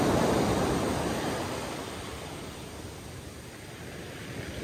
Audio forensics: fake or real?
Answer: fake